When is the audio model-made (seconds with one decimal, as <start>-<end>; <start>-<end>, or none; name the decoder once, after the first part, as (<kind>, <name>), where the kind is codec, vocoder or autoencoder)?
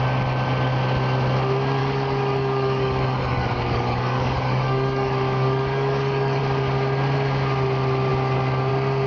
1.8-6.4 (codec, DAC)